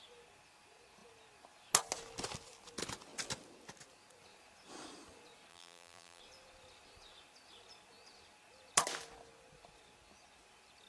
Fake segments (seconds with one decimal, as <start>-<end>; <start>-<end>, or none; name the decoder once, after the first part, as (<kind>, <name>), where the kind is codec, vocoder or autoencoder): 5.5-6.2 (vocoder, BigVGAN v2)